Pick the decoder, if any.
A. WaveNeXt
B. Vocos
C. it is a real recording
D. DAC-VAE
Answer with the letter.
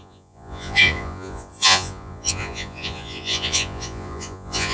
B